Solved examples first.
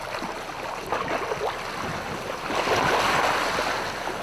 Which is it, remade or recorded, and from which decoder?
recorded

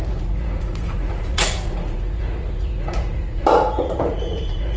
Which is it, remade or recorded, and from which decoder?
remade, vocoder, Vocos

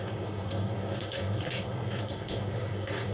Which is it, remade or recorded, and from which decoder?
remade, codec, SNAC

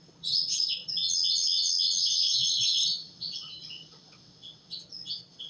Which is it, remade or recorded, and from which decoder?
remade, vocoder, WaveNeXt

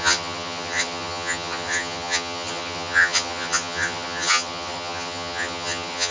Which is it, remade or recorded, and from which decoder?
remade, vocoder, HiFi-GAN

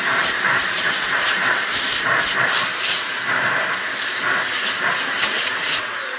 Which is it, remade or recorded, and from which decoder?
remade, vocoder, BigVGAN v2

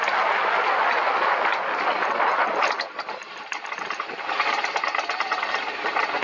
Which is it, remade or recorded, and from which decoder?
recorded